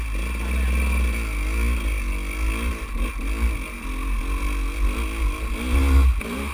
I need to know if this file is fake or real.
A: real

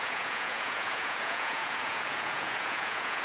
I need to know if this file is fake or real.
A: fake